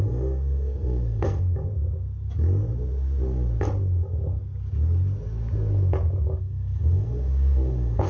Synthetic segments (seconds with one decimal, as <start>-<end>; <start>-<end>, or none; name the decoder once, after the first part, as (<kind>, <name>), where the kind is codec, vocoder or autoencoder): 0.0-1.7 (codec, SNAC); 6.4-8.1